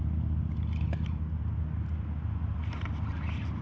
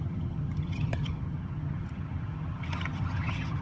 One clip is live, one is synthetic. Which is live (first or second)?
first